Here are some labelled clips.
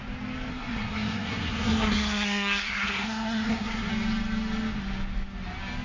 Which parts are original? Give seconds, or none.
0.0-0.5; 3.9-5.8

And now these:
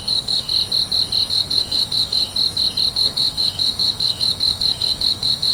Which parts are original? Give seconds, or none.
0.5-1.3; 2.3-2.9

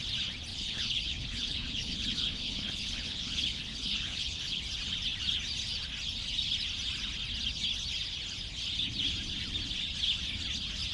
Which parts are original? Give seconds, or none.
0.0-0.5; 4.6-10.9